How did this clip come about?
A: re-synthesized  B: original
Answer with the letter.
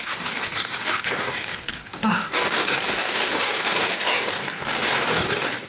A